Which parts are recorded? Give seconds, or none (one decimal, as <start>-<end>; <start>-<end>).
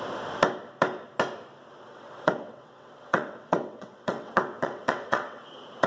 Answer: 0.0-1.9; 5.4-5.9